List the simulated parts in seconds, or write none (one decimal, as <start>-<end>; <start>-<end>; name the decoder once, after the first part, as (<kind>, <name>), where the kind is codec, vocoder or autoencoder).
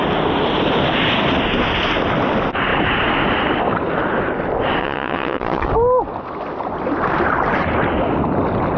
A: 4.8-5.7 (vocoder, WaveNeXt)